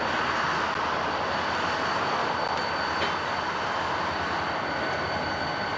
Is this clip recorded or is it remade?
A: recorded